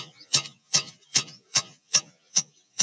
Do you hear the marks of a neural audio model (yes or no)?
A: yes